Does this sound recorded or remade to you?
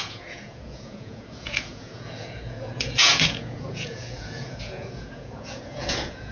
remade